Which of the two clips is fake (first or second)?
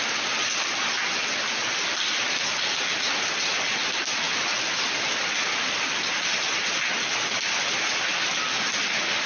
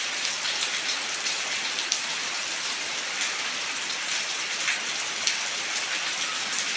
second